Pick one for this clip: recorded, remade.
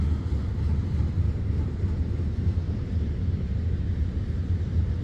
recorded